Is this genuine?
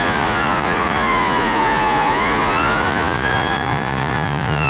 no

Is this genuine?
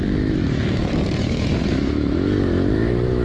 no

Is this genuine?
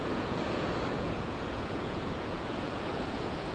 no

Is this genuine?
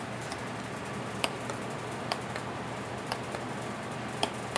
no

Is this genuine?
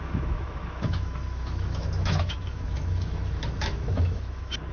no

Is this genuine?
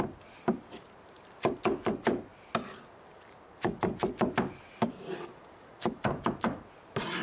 yes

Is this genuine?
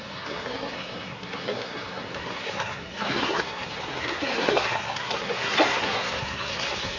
no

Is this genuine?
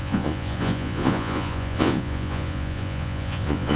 no